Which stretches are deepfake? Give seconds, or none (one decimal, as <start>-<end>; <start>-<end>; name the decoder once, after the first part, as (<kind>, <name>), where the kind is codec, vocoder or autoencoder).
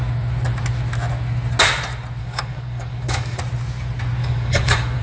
2.2-3.4 (codec, DAC); 4.2-5.0